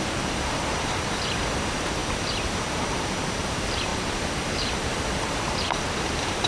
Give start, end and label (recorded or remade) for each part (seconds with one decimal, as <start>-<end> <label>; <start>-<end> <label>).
0.0-2.0 remade; 2.0-3.4 recorded; 3.4-6.5 remade